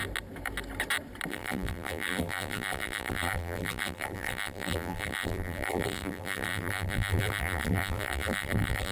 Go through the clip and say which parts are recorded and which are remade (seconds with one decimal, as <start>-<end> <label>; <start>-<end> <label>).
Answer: 0.0-1.3 recorded; 1.3-8.9 remade